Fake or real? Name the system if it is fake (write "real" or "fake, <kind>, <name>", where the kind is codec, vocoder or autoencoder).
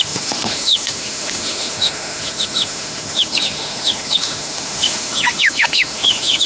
fake, autoencoder, DAC-VAE